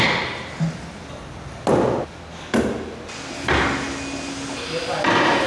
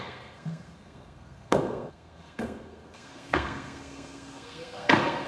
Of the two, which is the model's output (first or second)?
second